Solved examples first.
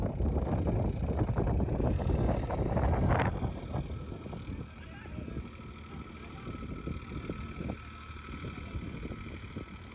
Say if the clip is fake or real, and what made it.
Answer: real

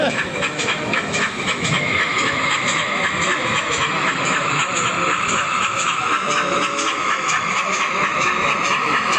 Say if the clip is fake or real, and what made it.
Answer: fake, autoencoder, DAC-VAE